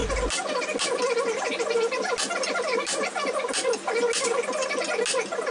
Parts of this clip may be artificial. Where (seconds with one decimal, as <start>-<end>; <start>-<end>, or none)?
none